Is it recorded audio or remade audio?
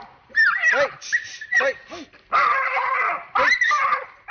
recorded